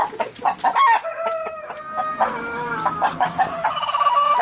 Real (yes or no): yes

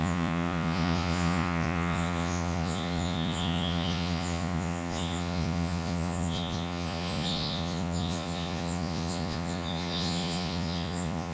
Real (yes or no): no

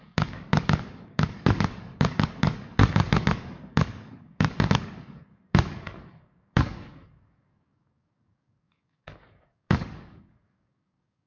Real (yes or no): no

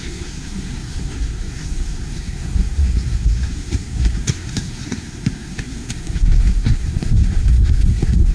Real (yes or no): no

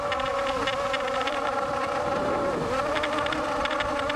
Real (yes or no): yes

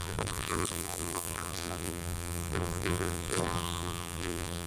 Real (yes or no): no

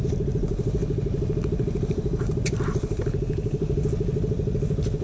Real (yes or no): yes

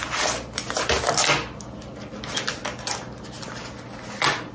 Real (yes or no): yes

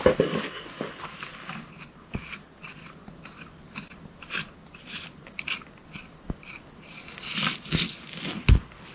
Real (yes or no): yes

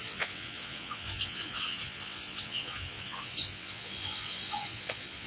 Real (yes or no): no